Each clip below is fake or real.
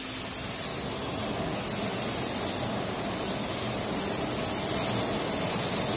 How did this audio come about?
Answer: real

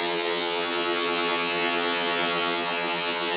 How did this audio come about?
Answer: fake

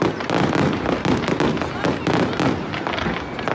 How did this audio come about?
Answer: real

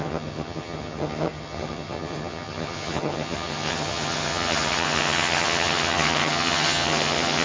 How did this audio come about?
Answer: fake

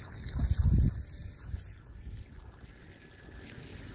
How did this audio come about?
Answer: real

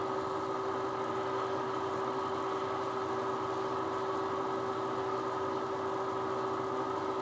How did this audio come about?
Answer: real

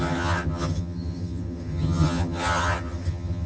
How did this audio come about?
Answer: fake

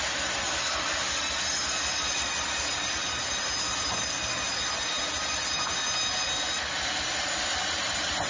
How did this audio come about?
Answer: real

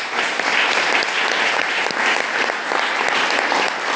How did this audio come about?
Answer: real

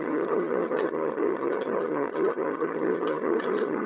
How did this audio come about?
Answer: fake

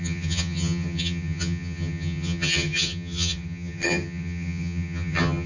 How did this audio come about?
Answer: fake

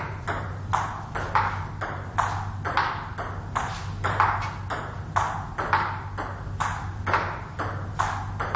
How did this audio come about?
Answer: real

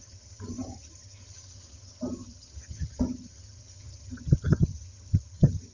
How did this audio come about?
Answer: fake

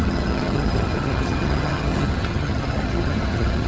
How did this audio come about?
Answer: fake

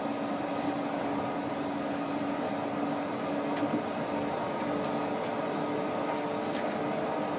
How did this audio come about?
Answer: real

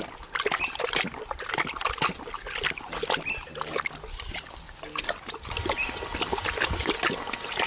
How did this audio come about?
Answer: real